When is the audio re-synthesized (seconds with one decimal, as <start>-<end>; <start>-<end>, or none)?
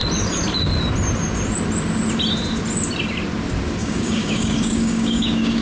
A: 3.8-5.6